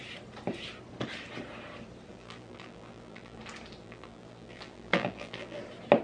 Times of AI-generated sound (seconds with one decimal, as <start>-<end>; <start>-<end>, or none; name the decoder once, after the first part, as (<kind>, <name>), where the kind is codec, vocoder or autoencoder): 2.1-3.4 (vocoder, BigVGAN v2); 3.8-5.6